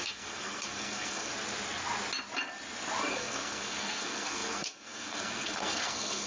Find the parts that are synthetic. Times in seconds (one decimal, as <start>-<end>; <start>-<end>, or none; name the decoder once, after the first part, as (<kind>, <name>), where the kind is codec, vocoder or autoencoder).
0.0-1.3 (codec, SNAC); 3.1-6.3